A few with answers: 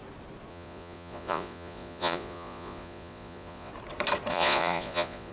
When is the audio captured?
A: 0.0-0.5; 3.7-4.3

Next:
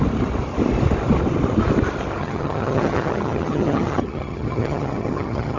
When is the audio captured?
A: 0.0-2.2